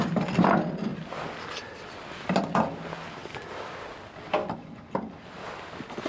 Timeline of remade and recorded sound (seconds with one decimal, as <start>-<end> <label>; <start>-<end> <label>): 0.0-6.1 recorded